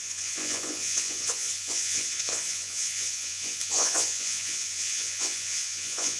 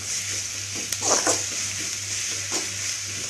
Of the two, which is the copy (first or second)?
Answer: first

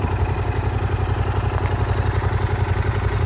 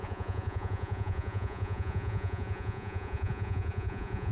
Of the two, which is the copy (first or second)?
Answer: second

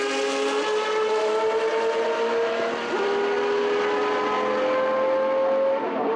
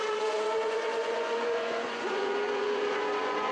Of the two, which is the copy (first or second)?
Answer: second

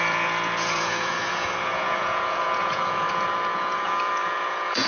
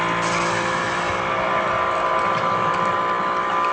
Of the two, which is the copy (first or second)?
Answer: first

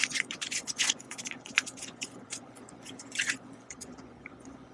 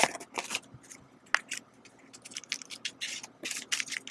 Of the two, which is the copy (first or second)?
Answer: first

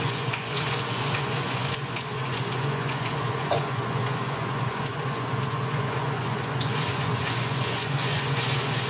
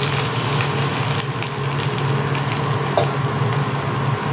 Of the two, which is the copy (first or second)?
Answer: first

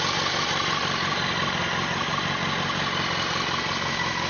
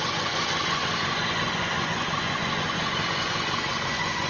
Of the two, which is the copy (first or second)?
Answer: second